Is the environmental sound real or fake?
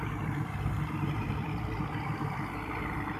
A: fake